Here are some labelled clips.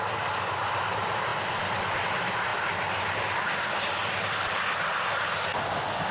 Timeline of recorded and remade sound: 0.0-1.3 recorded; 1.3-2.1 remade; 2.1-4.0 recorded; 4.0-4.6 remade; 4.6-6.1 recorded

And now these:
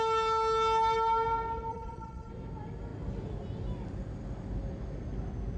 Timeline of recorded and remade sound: 0.0-1.7 recorded; 1.7-2.3 remade; 2.3-5.6 recorded